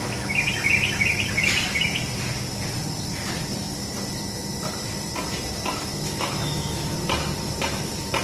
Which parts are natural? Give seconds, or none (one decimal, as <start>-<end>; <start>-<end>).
0.0-5.9; 6.9-8.2